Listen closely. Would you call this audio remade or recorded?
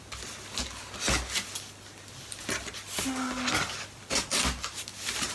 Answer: recorded